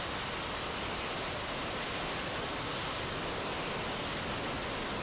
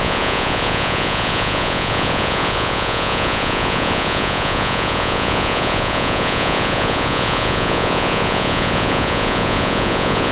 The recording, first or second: first